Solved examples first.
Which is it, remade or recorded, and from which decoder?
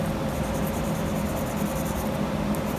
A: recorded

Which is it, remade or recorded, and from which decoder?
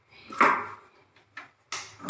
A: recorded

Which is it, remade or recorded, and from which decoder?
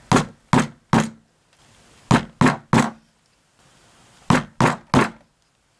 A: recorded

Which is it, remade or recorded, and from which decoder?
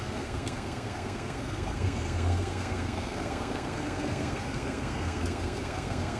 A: remade, codec, SNAC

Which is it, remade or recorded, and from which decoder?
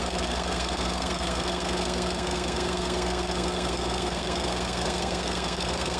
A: remade, codec, SNAC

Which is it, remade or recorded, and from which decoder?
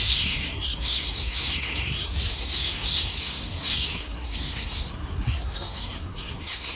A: remade, codec, SNAC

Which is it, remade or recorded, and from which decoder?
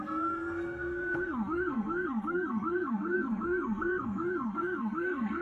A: remade, codec, SNAC